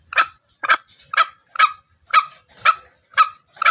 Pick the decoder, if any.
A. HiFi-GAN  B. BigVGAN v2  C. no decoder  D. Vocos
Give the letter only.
C